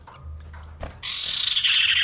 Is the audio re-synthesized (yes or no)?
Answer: no